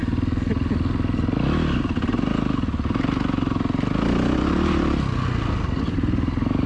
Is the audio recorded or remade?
recorded